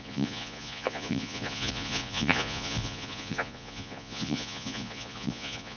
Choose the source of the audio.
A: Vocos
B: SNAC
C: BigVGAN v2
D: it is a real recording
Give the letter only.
A